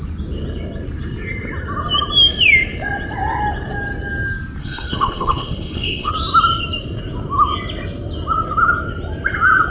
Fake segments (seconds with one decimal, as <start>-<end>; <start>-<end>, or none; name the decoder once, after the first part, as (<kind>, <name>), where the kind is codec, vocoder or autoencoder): 4.6-6.1 (codec, HILCodec)